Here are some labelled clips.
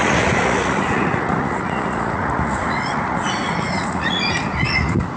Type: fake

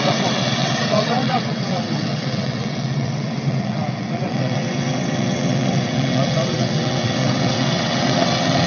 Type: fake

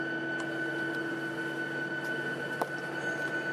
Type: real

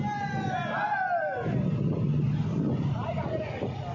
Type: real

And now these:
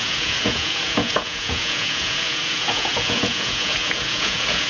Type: fake